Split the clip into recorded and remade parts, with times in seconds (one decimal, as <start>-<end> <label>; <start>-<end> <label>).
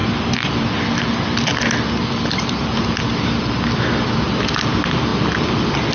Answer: 0.0-0.7 remade; 0.7-1.5 recorded; 1.5-4.2 remade; 4.2-5.9 recorded